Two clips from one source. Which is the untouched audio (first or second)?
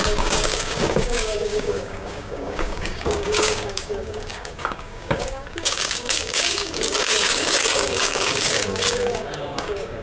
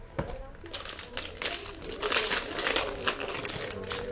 second